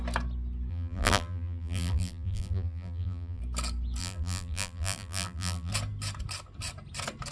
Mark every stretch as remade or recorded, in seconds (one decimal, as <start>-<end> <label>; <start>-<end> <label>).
0.0-0.7 recorded; 0.7-3.4 remade; 3.4-4.0 recorded; 4.0-5.7 remade; 5.7-7.3 recorded